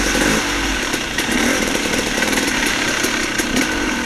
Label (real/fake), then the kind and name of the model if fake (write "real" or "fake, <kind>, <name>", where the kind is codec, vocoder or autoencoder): fake, vocoder, BigVGAN v2